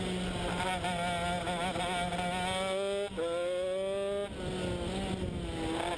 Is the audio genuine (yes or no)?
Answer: yes